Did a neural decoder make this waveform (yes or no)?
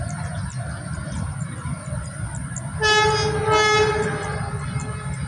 no